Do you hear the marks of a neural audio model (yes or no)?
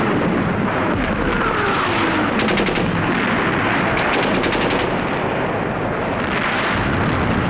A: no